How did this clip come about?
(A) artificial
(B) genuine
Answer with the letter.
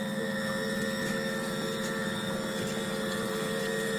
A